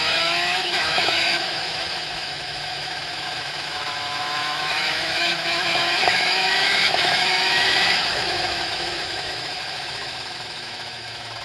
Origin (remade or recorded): remade